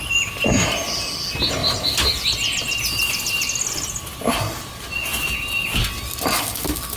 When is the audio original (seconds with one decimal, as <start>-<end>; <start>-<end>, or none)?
0.0-7.0